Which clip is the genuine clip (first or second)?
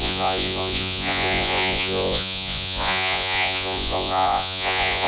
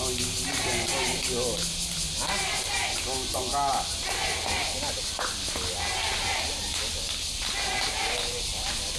second